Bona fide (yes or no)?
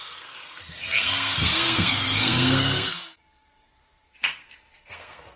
no